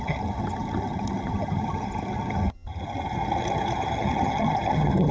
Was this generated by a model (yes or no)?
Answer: yes